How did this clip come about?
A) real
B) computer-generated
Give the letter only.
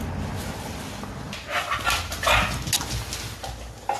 A